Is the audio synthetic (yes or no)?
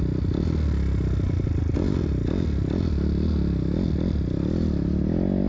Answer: no